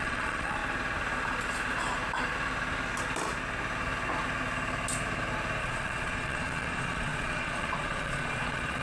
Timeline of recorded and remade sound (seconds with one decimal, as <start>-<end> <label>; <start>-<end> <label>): 0.0-0.6 remade; 0.6-5.6 recorded; 5.6-8.8 remade